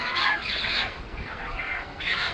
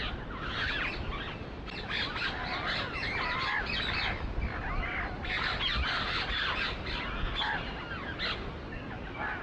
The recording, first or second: second